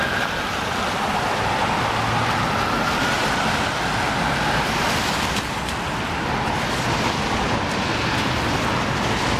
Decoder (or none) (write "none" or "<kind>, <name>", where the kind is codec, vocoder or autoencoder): none